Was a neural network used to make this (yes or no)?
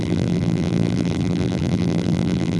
yes